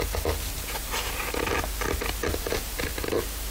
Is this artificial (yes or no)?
no